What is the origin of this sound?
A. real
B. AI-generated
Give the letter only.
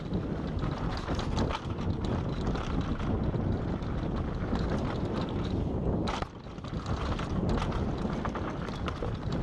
A